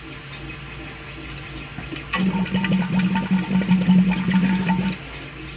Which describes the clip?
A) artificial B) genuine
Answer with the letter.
B